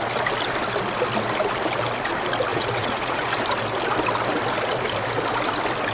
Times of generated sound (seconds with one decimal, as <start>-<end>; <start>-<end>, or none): 2.5-3.3